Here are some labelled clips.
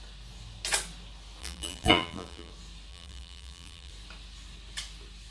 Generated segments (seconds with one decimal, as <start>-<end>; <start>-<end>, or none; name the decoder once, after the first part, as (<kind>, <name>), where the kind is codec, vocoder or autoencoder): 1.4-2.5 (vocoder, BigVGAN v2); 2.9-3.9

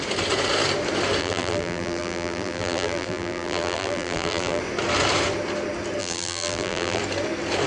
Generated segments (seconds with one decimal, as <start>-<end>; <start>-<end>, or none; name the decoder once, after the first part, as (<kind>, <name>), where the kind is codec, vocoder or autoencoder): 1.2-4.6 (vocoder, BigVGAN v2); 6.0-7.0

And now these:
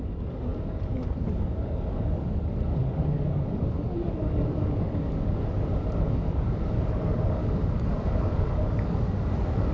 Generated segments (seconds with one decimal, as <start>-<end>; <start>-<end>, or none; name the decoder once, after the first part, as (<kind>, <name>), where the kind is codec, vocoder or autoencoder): 0.0-9.7 (codec, DAC)

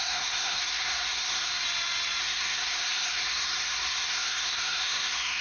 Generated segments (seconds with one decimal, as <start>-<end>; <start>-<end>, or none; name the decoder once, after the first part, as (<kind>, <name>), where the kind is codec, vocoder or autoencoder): 0.0-1.5 (codec, SNAC); 2.2-5.4

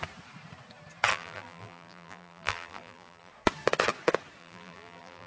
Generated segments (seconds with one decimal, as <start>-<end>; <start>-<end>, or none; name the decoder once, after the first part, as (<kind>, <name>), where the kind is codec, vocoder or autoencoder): 1.1-3.3 (vocoder, BigVGAN v2); 4.4-5.3